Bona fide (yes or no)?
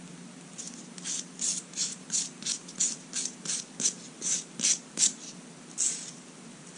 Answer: yes